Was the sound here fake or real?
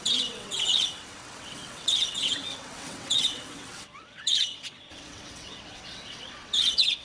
fake